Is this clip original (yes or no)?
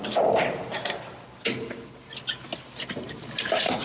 yes